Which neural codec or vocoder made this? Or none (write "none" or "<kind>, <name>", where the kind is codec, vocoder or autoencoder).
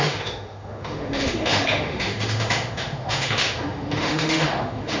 autoencoder, DAC-VAE